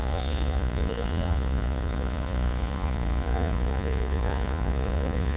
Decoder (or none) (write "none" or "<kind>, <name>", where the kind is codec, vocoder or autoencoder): vocoder, Vocos